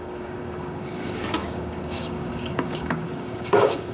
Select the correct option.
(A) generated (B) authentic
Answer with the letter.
A